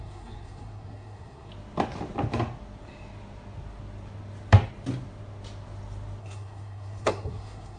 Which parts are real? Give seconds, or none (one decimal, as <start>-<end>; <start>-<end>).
1.5-6.2